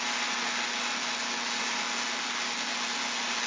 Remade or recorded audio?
recorded